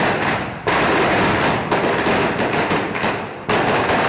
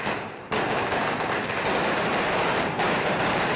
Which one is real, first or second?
first